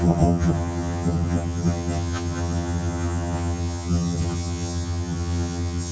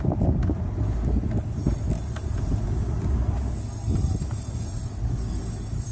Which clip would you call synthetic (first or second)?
first